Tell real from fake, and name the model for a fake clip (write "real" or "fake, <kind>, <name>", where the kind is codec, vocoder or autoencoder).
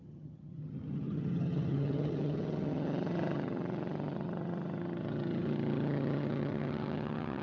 fake, vocoder, HiFi-GAN